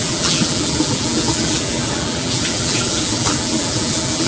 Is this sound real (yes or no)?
no